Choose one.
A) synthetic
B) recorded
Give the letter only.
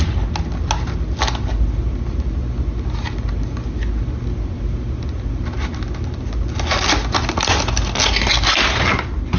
B